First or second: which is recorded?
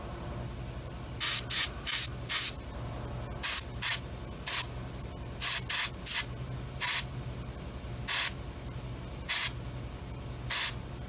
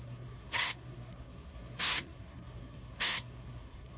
first